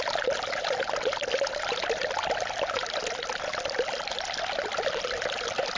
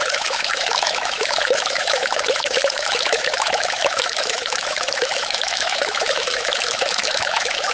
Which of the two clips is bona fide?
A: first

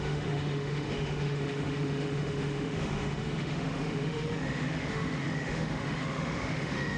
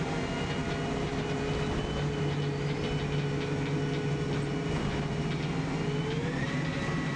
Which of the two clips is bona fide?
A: second